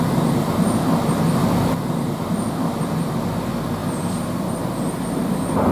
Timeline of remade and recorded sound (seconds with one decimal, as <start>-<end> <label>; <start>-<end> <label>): 0.0-5.7 recorded